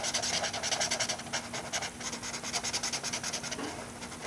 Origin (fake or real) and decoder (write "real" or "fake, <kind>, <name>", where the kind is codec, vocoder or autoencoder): real